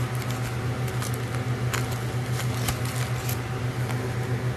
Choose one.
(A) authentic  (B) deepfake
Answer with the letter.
A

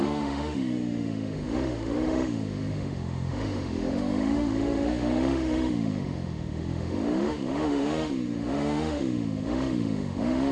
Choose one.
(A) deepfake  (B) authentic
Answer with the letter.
A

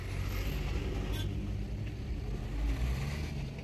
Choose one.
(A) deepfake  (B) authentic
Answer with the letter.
B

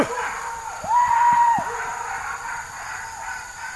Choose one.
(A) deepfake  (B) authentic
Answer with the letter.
A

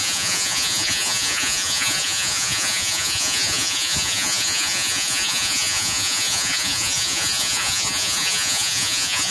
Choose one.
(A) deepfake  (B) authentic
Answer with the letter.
A